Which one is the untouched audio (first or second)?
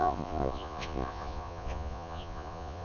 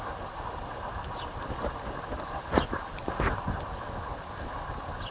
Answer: second